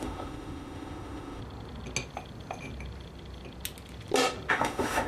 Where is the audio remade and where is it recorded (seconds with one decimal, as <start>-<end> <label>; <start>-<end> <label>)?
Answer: 0.0-1.4 remade; 1.4-4.5 recorded; 4.5-5.1 remade